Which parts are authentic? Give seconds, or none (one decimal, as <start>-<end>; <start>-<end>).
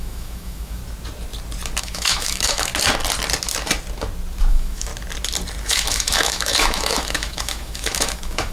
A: 0.8-1.8; 2.7-4.5; 4.9-5.6